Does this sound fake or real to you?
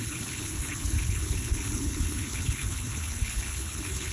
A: fake